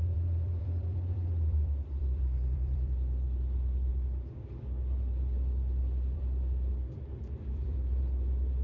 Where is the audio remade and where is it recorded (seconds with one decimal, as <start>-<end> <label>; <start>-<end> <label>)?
0.0-3.9 remade; 3.9-5.8 recorded; 5.8-8.6 remade